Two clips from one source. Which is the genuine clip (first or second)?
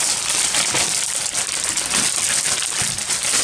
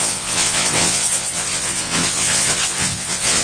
first